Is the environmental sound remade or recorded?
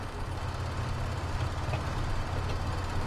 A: recorded